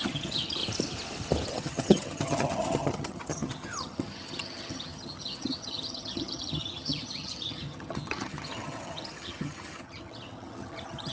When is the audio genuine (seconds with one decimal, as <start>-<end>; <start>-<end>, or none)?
0.6-1.5